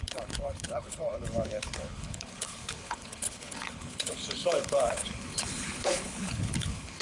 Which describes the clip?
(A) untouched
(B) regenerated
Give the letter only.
B